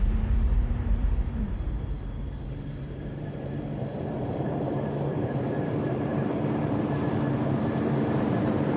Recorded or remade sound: remade